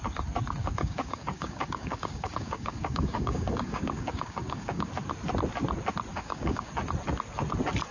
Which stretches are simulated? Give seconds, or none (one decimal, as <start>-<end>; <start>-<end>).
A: 0.6-4.9; 6.1-6.7